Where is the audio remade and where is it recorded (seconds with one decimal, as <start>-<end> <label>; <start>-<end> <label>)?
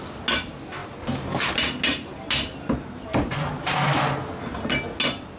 0.0-5.4 recorded